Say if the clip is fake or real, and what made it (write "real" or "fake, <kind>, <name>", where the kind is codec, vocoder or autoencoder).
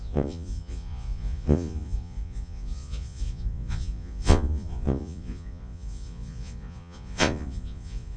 fake, vocoder, Vocos